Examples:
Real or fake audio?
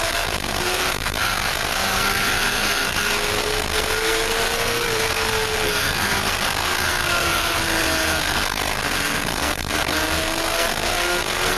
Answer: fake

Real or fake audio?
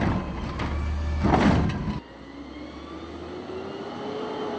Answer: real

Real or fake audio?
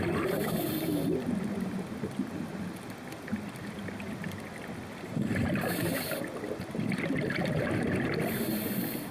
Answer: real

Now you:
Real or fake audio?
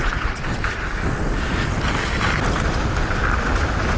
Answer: real